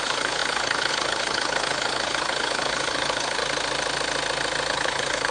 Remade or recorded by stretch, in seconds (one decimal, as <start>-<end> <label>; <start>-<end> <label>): 0.0-3.4 remade; 3.4-4.7 recorded; 4.7-5.3 remade